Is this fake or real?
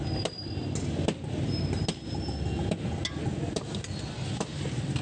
real